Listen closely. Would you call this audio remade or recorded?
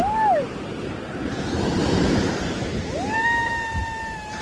remade